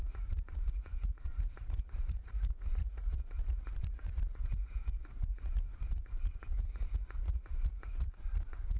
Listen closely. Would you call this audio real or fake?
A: fake